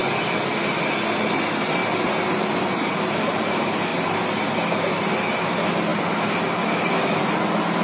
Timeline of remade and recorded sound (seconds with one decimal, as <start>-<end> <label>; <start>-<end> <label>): 0.0-7.8 recorded